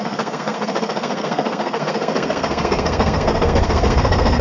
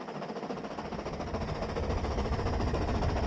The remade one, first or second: first